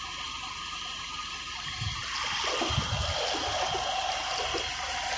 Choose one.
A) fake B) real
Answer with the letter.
B